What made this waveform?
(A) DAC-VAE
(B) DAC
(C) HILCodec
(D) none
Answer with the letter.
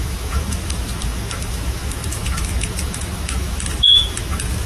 A